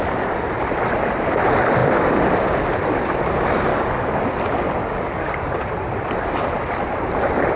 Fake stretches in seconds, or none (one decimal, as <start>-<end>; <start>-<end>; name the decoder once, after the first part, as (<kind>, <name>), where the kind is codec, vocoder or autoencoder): 3.7-4.2 (codec, DAC); 4.8-5.6